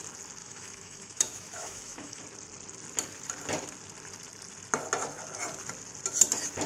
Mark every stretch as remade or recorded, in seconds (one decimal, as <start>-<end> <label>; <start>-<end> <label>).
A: 0.0-0.4 recorded; 0.4-2.2 remade; 2.2-6.7 recorded